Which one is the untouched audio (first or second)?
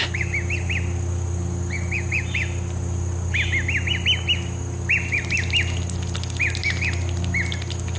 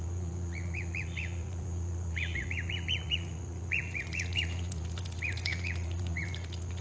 first